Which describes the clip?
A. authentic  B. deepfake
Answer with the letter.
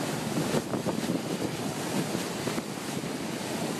A